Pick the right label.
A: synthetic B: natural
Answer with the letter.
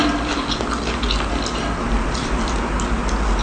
B